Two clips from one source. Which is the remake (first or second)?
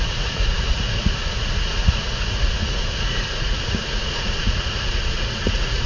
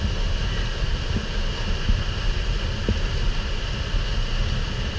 first